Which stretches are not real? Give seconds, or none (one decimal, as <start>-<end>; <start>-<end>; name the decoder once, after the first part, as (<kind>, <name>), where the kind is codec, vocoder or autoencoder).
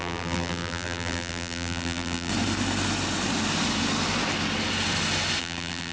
0.0-2.3 (vocoder, BigVGAN v2); 5.4-5.9